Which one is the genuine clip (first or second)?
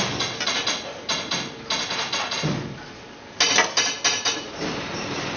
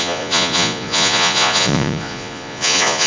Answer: first